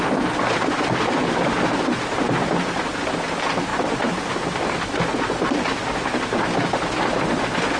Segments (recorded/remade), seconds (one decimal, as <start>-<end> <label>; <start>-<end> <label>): 0.0-3.7 remade; 3.7-5.3 recorded; 5.3-7.8 remade